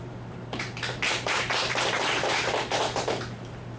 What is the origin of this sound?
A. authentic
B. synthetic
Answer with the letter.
B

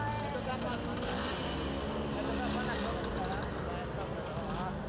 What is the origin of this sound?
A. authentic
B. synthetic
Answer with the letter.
A